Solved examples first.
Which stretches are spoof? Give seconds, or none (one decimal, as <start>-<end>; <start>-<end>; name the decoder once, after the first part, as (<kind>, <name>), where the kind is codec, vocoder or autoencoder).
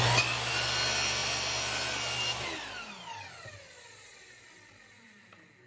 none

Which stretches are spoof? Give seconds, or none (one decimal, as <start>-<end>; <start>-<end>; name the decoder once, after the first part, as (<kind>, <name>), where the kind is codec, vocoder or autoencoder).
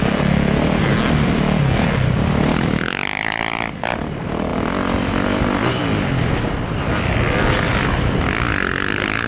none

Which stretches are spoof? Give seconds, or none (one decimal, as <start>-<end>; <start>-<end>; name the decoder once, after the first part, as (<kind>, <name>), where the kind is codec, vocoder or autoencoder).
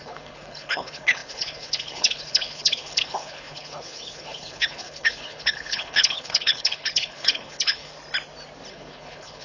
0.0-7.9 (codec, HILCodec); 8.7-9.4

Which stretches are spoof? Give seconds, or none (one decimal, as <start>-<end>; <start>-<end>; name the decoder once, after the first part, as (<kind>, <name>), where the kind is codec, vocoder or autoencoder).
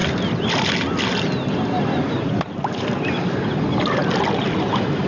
none